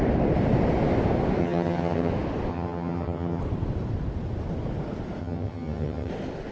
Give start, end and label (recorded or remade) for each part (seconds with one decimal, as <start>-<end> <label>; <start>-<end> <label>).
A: 0.0-1.4 recorded; 1.4-2.1 remade; 2.1-2.5 recorded; 2.5-3.4 remade; 3.4-5.2 recorded; 5.2-6.1 remade; 6.1-6.5 recorded